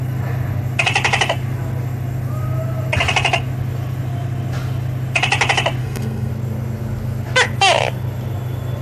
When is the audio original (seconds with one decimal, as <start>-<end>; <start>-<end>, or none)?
0.0-5.8; 6.3-8.8